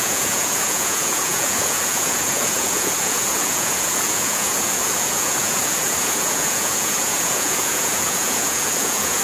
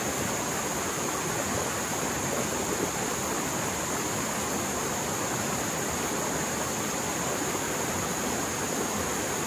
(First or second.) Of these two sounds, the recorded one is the second